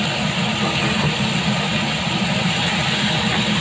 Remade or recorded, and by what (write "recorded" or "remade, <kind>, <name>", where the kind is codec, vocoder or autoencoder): recorded